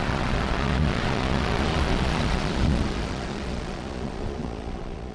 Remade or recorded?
remade